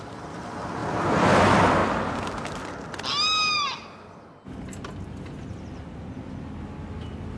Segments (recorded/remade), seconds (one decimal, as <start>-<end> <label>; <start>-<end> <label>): 0.0-7.4 recorded